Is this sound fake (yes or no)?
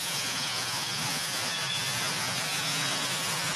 yes